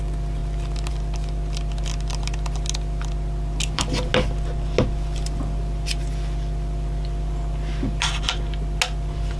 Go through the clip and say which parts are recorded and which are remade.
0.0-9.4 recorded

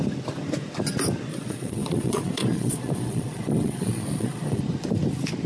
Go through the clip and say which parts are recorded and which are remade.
0.0-1.3 recorded; 1.3-4.6 remade; 4.6-5.5 recorded

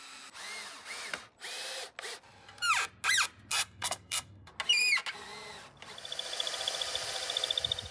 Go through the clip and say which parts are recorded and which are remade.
0.0-3.5 recorded; 3.5-4.5 remade; 4.5-7.9 recorded